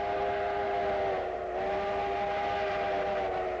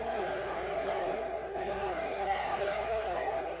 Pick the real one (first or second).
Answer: first